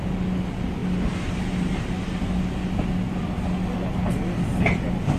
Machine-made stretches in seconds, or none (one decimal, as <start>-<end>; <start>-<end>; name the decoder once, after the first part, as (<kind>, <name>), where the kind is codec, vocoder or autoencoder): none